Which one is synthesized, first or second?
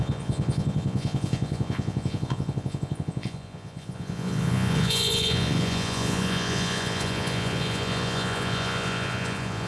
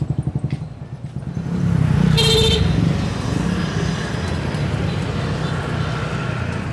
first